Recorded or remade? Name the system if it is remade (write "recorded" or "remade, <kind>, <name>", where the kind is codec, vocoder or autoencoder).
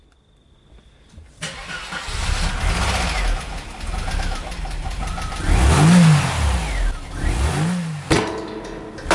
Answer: recorded